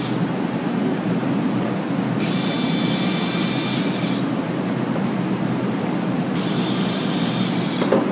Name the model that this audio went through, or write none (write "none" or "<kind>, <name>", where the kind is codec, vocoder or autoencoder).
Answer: none